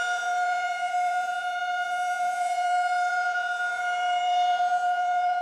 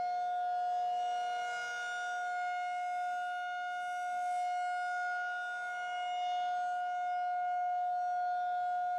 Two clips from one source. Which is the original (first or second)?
second